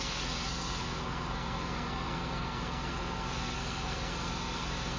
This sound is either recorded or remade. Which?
remade